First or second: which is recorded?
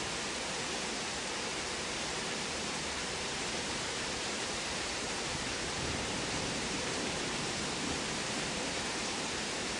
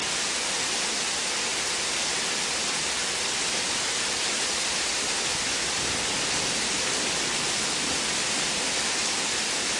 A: second